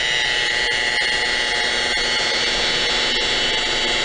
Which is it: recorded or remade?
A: recorded